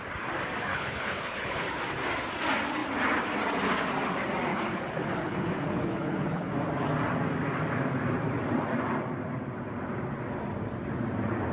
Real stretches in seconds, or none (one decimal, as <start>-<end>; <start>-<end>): 0.0-0.7; 1.8-4.5; 6.5-11.5